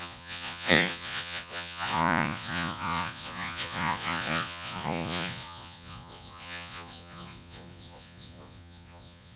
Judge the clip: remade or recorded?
remade